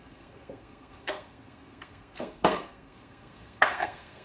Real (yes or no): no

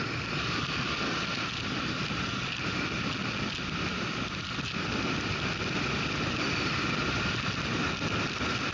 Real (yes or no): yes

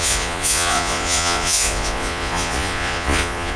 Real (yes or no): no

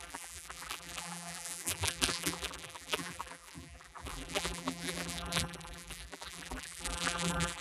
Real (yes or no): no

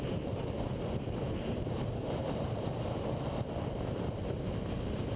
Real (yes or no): yes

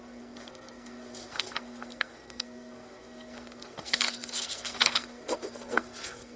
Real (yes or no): no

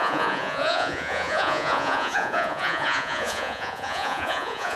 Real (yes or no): no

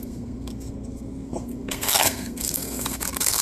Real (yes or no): no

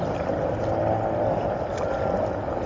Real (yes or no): yes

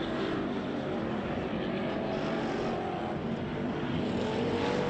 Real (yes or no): yes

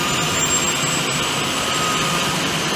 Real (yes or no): yes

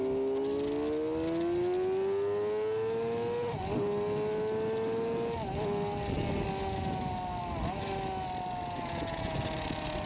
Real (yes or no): yes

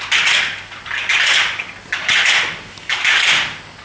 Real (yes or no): yes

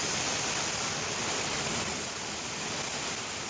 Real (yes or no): yes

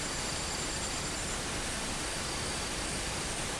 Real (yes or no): yes